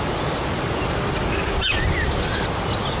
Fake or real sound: real